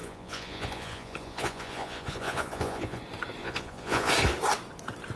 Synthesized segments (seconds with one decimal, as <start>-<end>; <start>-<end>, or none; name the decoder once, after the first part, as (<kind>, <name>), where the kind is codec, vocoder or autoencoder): 0.0-3.0 (vocoder, Vocos); 3.4-4.1